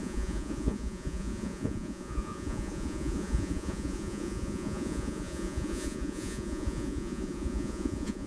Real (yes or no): no